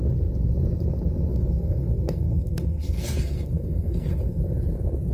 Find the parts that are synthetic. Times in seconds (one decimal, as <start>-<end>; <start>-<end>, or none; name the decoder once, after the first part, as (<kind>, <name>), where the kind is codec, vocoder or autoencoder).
1.3-4.4 (codec, SNAC)